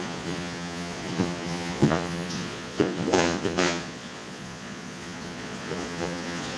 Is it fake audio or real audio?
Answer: fake